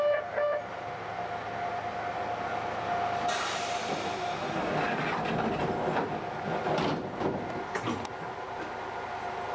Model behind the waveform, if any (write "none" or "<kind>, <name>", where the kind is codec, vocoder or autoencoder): none